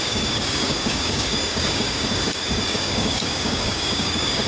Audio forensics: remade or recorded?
remade